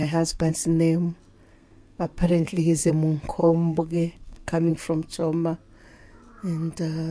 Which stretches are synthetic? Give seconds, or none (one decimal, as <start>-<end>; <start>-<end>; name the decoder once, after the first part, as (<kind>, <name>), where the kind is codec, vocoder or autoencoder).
0.0-0.5 (codec, SNAC); 1.5-2.9; 3.4-4.7